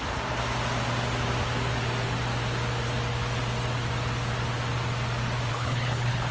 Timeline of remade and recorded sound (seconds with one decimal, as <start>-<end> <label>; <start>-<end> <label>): 0.0-5.5 recorded; 5.5-6.3 remade

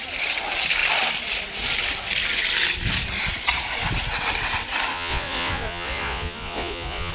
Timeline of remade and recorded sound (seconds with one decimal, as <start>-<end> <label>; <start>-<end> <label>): 0.0-4.9 recorded; 4.9-7.1 remade

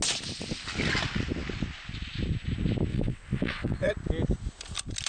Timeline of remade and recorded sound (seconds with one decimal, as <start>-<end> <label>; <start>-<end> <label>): 0.0-2.9 recorded; 2.9-3.9 remade; 3.9-5.1 recorded

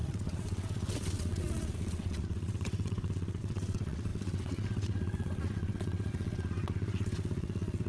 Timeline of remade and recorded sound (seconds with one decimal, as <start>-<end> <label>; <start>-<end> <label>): 0.0-7.9 remade